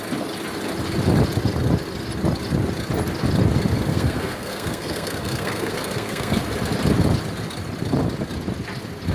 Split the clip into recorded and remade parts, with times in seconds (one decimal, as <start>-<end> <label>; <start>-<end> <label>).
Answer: 0.0-3.9 recorded; 3.9-6.4 remade; 6.4-9.1 recorded